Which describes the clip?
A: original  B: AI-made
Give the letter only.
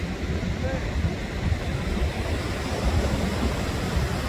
A